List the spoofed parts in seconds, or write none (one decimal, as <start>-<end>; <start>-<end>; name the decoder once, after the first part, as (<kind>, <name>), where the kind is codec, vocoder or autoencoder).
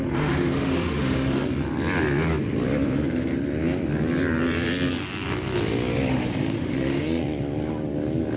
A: 0.0-1.4 (autoencoder, DAC-VAE); 6.1-7.2